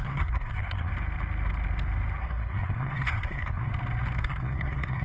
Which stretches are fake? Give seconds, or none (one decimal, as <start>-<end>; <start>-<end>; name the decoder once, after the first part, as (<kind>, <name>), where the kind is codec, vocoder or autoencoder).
0.0-0.9 (codec, SNAC); 2.2-3.7; 4.2-5.0